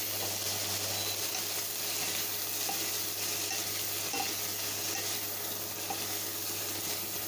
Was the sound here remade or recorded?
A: recorded